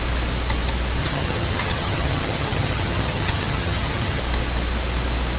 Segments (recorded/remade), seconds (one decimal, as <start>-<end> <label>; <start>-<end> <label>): 0.0-1.0 recorded; 1.0-4.2 remade; 4.2-5.4 recorded

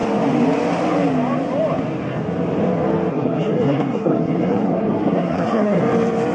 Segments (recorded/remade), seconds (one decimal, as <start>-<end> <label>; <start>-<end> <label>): 0.0-3.1 recorded; 3.1-5.8 remade; 5.8-6.3 recorded

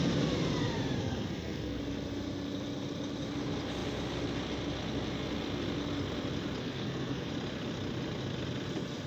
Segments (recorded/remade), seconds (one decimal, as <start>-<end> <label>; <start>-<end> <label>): 0.0-1.0 recorded; 1.0-1.8 remade; 1.8-6.6 recorded; 6.6-7.3 remade; 7.3-9.1 recorded

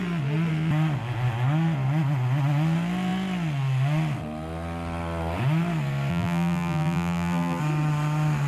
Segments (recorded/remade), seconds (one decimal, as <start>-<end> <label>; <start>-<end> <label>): 0.0-6.1 recorded; 6.1-7.6 remade; 7.6-8.5 recorded